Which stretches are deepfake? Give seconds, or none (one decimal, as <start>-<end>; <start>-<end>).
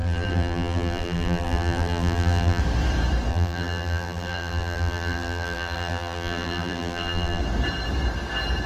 0.0-2.6; 3.3-7.4